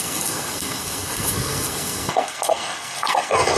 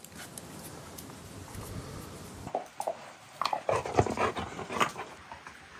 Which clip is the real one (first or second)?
second